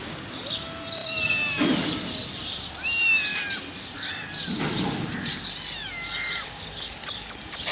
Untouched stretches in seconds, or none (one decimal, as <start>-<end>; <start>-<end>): 0.0-1.0; 2.7-3.3; 6.5-7.7